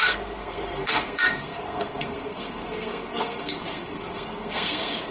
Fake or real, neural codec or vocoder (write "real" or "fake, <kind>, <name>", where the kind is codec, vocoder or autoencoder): fake, codec, SNAC